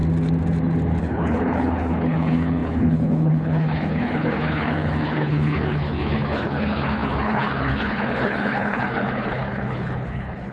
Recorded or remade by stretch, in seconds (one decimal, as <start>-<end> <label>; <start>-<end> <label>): 0.0-1.0 recorded; 1.0-10.5 remade